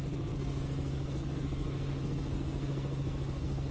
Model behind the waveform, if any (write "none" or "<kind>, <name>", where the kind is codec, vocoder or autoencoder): codec, SNAC